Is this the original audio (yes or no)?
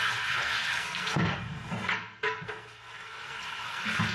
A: no